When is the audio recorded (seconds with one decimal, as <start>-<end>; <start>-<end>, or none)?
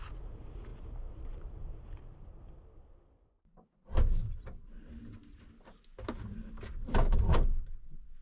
0.0-0.7; 2.4-8.2